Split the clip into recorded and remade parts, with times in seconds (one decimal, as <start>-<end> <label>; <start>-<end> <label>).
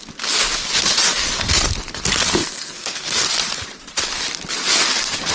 0.0-2.4 recorded; 2.4-3.3 remade; 3.3-5.3 recorded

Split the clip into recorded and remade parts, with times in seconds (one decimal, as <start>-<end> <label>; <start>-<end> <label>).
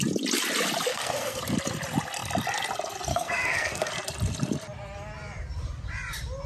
0.0-0.9 recorded; 0.9-1.4 remade; 1.4-3.1 recorded; 3.1-3.9 remade; 3.9-6.5 recorded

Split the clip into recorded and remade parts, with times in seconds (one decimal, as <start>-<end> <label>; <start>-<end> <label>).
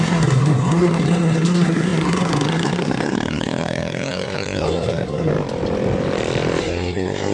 0.0-5.3 remade; 5.3-6.6 recorded; 6.6-7.3 remade